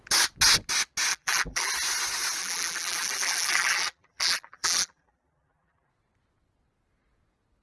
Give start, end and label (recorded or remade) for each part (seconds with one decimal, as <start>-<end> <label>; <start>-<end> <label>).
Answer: 0.0-1.1 recorded; 1.1-1.7 remade; 1.7-2.4 recorded; 2.4-5.9 remade; 5.9-7.6 recorded